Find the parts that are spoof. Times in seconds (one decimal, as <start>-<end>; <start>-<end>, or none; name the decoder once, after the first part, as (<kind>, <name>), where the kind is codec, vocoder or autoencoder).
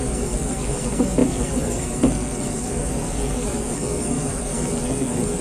0.0-5.4 (codec, SNAC)